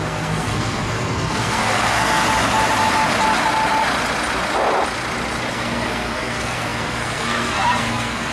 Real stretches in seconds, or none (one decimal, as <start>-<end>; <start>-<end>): 2.2-5.5